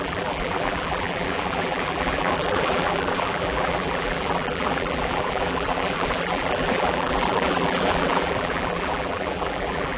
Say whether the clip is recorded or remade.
remade